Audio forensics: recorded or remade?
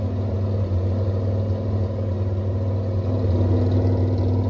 recorded